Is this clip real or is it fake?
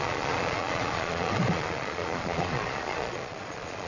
fake